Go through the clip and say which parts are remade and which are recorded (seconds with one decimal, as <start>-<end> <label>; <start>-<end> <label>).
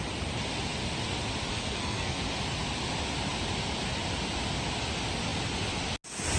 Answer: 0.0-1.5 recorded; 1.5-2.2 remade; 2.2-6.4 recorded